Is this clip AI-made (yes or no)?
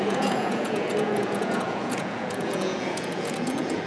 yes